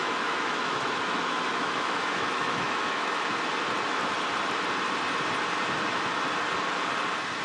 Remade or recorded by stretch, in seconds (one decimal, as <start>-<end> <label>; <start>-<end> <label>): 0.0-3.3 remade; 3.3-7.4 recorded